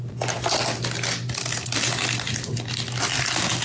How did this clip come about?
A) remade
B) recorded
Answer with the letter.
B